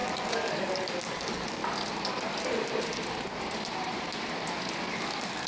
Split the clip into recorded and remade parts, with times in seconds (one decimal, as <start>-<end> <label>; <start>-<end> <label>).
0.0-1.6 remade; 1.6-4.9 recorded; 4.9-5.5 remade